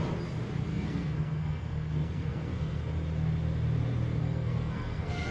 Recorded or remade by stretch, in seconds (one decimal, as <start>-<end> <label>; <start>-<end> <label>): 0.0-0.7 recorded; 0.7-2.9 remade; 2.9-4.2 recorded; 4.2-5.3 remade